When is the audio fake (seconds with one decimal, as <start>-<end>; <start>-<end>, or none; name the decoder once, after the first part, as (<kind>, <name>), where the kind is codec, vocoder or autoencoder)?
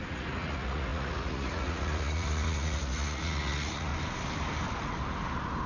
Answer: 0.0-3.9 (vocoder, Vocos)